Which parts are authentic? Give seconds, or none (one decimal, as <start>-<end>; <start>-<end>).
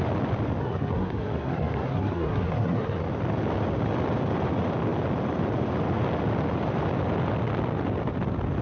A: 0.0-0.6; 3.0-8.6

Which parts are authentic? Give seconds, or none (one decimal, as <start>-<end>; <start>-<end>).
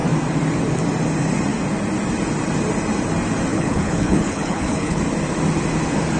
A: 0.0-3.5; 5.0-6.2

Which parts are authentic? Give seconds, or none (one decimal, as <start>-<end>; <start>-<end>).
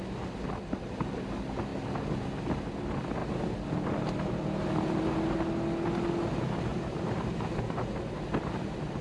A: 0.0-6.7; 7.6-9.0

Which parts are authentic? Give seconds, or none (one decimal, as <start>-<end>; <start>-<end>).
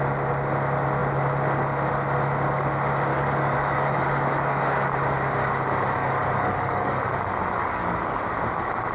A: 0.0-3.1; 4.9-6.0; 7.0-7.6; 8.2-8.9